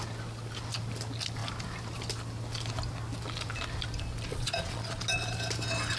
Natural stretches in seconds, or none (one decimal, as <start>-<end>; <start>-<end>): 0.0-4.3; 5.0-6.0